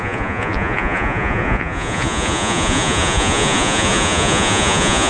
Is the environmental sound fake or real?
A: fake